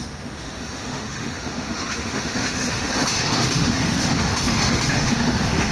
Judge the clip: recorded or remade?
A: remade